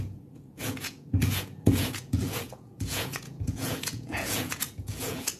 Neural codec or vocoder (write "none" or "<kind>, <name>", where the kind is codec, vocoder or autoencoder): vocoder, Vocos